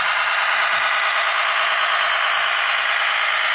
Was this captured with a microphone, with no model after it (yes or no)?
yes